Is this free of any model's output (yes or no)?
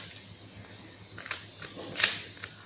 yes